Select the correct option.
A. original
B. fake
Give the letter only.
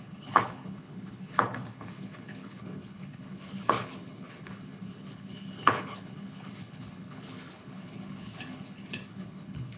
B